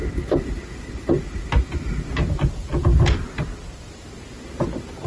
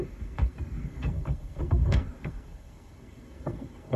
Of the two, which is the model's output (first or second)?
second